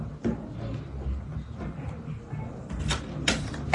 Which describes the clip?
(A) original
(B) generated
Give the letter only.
A